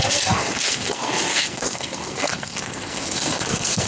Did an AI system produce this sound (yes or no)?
yes